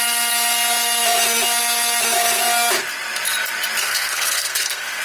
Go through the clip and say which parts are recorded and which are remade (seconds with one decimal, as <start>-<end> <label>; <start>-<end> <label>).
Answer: 0.0-3.8 recorded; 3.8-5.0 remade